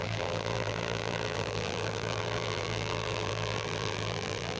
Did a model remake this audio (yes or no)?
yes